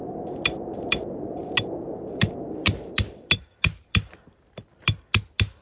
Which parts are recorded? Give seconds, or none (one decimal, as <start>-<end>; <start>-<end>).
0.0-5.6